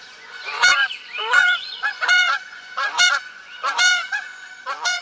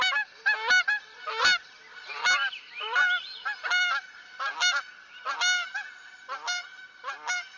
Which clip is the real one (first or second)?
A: second